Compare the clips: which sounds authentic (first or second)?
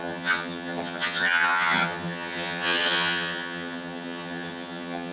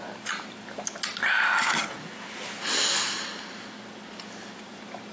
second